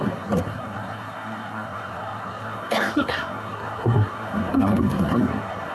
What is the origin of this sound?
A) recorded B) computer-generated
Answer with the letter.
B